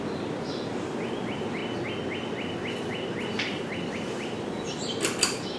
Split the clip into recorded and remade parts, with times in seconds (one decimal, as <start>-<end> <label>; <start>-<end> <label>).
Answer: 0.0-1.6 remade; 1.6-3.9 recorded; 3.9-5.6 remade

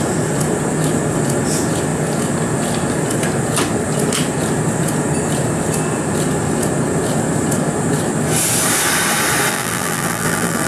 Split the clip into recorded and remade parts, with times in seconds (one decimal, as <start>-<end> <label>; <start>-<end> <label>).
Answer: 0.0-9.5 recorded; 9.5-10.7 remade

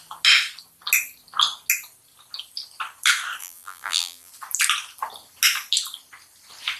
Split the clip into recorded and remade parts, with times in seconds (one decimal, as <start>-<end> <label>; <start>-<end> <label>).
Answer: 0.0-3.4 recorded; 3.4-4.3 remade; 4.3-6.8 recorded

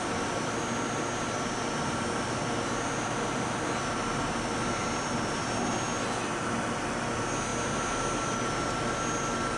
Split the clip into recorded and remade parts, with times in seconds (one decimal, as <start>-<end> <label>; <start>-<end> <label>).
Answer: 0.0-9.6 recorded

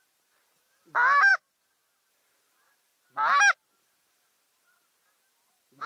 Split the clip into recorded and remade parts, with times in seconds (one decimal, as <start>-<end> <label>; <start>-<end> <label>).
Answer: 0.0-1.3 remade; 1.3-2.1 recorded; 2.1-2.9 remade; 2.9-3.8 recorded; 3.8-5.9 remade